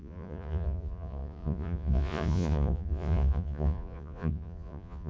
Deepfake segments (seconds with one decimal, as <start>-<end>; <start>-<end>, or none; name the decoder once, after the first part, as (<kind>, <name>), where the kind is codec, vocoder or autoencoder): 0.0-5.1 (vocoder, Vocos)

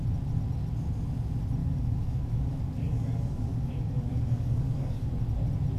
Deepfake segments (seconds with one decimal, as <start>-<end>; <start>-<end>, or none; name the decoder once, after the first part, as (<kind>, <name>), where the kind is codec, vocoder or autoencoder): 1.6-5.1 (codec, DAC)

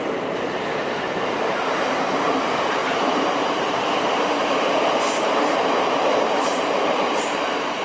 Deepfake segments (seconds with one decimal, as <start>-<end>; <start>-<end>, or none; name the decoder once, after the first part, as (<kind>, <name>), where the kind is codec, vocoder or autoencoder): 0.0-7.8 (vocoder, BigVGAN v2)

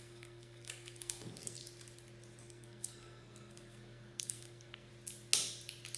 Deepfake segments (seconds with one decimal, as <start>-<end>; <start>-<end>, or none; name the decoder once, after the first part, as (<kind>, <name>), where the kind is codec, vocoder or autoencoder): 0.0-1.6 (codec, SNAC); 2.4-4.9

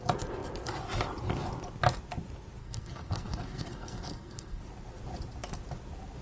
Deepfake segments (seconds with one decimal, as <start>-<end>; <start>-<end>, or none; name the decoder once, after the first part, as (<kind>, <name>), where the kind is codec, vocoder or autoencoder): 2.6-4.6 (codec, SNAC)

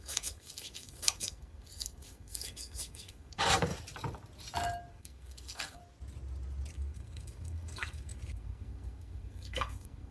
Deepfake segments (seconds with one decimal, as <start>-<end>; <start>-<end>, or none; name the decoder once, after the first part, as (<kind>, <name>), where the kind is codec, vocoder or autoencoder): 0.0-3.7 (codec, SNAC); 4.9-5.8; 6.7-10.1